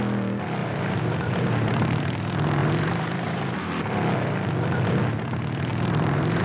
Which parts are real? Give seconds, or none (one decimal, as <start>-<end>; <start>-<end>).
0.0-0.6; 2.0-2.6; 3.7-5.7